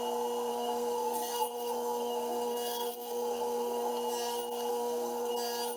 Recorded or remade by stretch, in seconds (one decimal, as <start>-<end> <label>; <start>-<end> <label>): 0.0-0.5 recorded; 0.5-3.9 remade; 3.9-4.7 recorded; 4.7-5.3 remade; 5.3-5.8 recorded